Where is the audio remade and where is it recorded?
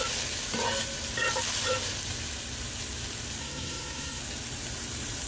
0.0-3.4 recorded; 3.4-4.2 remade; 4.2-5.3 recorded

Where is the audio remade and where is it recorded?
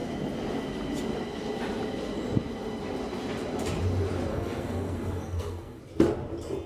0.0-4.3 recorded; 4.3-5.8 remade; 5.8-6.7 recorded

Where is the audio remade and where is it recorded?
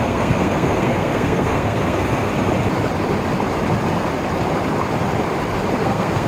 0.0-2.3 remade; 2.3-5.8 recorded; 5.8-6.3 remade